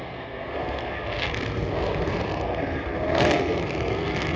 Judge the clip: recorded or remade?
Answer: remade